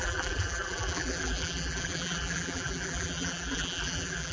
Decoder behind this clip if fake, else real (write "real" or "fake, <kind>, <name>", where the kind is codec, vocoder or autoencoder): fake, vocoder, BigVGAN v2